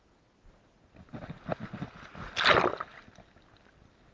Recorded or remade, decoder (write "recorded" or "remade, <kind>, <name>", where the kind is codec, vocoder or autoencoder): recorded